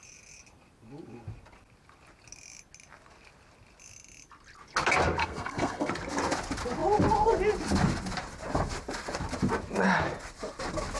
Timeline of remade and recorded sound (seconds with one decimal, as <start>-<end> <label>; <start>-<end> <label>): 0.0-5.2 recorded; 5.2-5.9 remade; 5.9-11.0 recorded